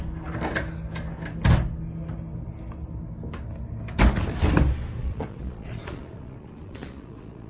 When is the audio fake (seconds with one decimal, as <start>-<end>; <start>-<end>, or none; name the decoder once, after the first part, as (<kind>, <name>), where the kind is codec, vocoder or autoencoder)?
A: 5.0-7.5 (vocoder, Vocos)